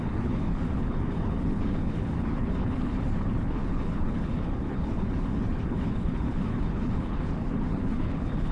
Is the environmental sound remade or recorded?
remade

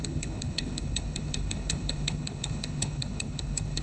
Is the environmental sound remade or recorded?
remade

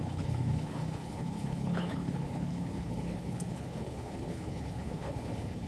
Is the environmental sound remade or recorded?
remade